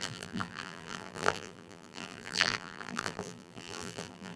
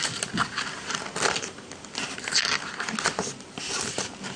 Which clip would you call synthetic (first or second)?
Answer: first